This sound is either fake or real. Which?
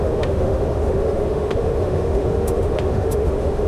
fake